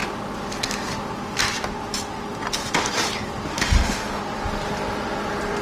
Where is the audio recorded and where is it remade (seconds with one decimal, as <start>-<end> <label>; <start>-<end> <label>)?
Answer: 0.0-3.5 recorded; 3.5-4.2 remade; 4.2-5.6 recorded

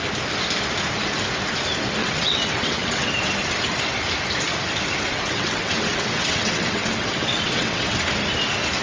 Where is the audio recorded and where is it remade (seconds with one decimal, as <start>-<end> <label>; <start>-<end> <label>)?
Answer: 0.0-2.0 recorded; 2.0-3.1 remade; 3.1-5.1 recorded; 5.1-8.0 remade; 8.0-8.8 recorded